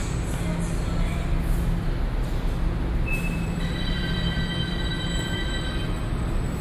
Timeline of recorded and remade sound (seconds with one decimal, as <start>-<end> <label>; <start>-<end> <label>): 0.0-3.1 recorded; 3.1-5.7 remade; 5.7-6.6 recorded